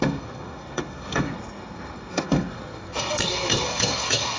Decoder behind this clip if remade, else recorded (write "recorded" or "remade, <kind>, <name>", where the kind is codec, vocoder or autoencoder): remade, codec, SNAC